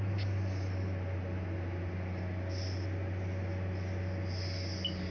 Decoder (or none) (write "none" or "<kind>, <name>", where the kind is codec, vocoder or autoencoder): none